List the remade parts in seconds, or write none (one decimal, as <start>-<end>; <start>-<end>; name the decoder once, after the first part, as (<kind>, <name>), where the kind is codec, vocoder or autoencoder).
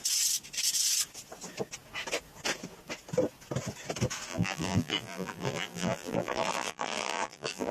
4.3-7.7 (vocoder, BigVGAN v2)